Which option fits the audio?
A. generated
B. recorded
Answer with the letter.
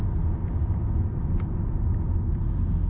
B